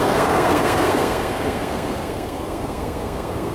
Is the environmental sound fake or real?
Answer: fake